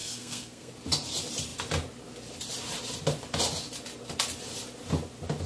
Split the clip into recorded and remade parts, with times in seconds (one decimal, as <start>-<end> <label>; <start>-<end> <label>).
0.0-0.7 remade; 0.7-5.5 recorded